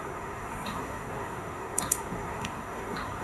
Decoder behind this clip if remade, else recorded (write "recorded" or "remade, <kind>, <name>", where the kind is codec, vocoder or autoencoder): remade, codec, SNAC